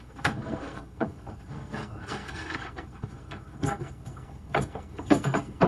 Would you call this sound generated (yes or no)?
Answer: yes